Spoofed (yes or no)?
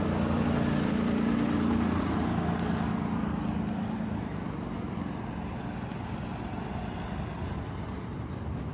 no